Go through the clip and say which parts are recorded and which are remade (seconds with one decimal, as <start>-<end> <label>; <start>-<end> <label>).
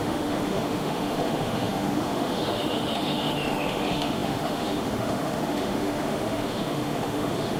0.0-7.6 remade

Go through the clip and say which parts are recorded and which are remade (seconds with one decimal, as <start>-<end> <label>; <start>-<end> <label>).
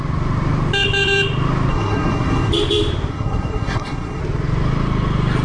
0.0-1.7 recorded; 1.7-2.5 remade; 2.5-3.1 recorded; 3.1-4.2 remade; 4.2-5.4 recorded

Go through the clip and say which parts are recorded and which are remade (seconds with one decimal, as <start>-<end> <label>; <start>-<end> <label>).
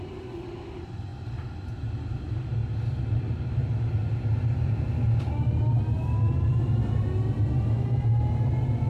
0.0-8.9 recorded